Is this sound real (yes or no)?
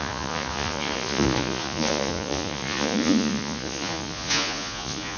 no